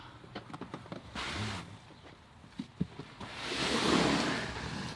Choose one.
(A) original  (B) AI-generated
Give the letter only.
A